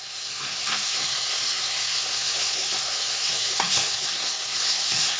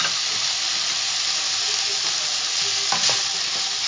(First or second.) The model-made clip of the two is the first